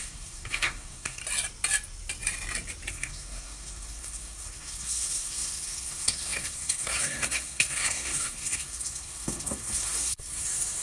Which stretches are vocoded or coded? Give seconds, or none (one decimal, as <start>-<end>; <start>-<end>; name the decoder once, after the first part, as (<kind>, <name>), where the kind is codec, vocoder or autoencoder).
0.0-1.2 (codec, SNAC); 2.9-10.8